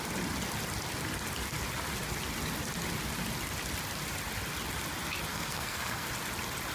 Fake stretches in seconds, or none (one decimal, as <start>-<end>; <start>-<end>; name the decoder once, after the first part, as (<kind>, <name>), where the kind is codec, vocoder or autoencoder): 5.3-6.1 (codec, SNAC)